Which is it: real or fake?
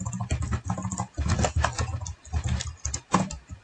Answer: real